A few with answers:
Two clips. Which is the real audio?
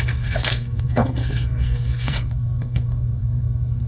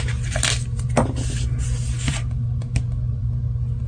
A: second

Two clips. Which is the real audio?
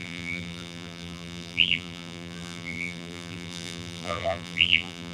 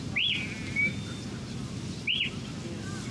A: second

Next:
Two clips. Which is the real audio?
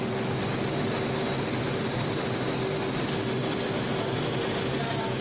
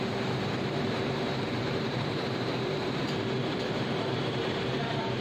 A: first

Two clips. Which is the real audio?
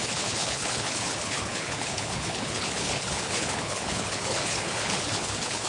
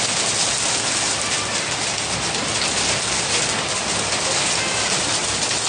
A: second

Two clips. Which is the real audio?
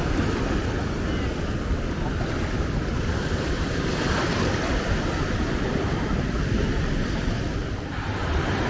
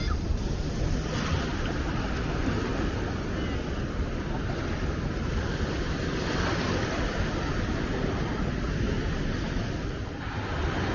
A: second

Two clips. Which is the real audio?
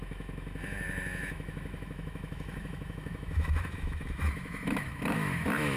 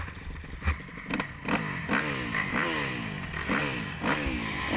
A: second